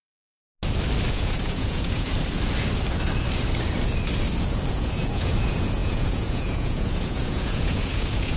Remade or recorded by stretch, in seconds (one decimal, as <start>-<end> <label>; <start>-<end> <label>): 0.0-0.4 remade; 0.4-1.1 recorded; 1.1-2.1 remade; 2.1-4.7 recorded; 4.7-8.4 remade